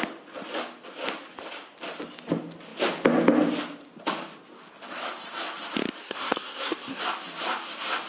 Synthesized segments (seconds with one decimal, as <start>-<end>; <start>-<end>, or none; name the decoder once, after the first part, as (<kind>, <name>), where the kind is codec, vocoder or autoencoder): 6.0-7.0 (codec, SNAC)